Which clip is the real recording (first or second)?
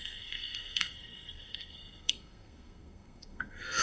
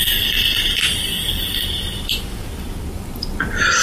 second